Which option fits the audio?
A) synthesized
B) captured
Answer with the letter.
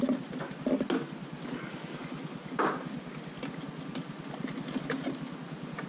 B